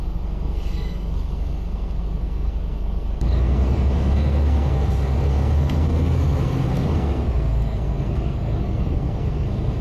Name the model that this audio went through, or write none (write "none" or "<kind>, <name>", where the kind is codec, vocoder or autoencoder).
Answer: codec, SNAC